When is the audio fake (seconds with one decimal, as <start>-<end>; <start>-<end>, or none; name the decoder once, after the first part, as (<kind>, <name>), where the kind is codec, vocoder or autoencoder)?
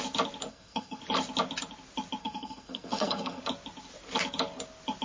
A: 0.5-1.0 (codec, SNAC); 2.2-3.4